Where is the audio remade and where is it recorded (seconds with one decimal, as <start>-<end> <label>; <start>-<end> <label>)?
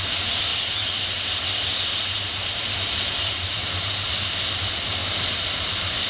0.0-0.5 recorded; 0.5-4.2 remade; 4.2-5.0 recorded; 5.0-6.1 remade